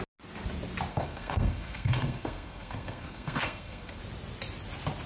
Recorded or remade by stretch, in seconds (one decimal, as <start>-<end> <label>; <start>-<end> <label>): 0.0-0.9 recorded; 0.9-4.0 remade; 4.0-5.1 recorded